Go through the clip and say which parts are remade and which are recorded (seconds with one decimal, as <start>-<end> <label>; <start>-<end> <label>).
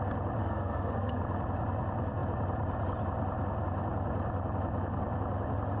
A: 0.0-0.4 recorded; 0.4-1.2 remade; 1.2-5.8 recorded